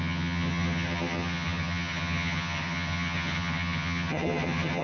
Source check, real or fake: fake